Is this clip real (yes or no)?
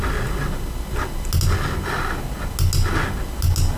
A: yes